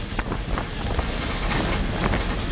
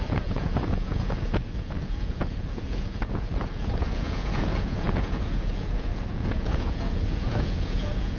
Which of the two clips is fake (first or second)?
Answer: second